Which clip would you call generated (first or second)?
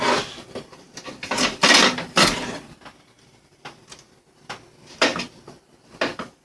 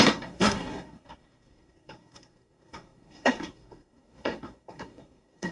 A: second